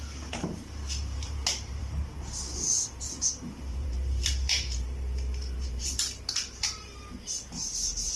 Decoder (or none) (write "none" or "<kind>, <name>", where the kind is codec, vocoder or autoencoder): vocoder, BigVGAN v2